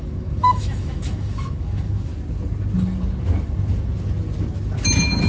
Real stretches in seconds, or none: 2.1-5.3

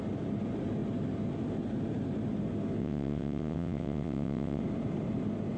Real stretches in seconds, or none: 0.0-2.8; 4.6-5.6